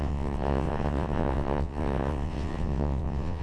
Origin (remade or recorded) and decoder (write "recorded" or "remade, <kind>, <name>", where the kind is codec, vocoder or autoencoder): remade, vocoder, WaveNeXt